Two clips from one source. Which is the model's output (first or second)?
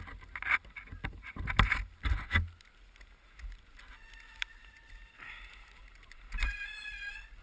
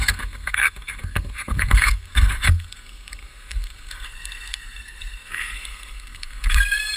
second